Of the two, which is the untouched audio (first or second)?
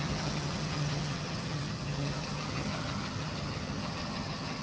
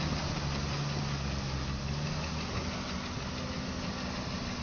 second